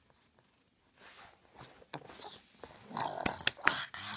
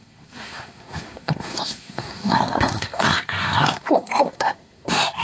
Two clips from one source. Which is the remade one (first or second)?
second